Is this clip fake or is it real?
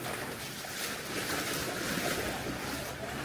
real